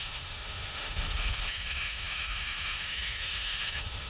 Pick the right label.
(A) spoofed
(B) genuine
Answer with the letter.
A